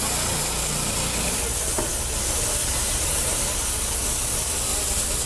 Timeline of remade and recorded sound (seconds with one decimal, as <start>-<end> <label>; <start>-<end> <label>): 0.0-2.6 recorded; 2.6-3.4 remade; 3.4-5.3 recorded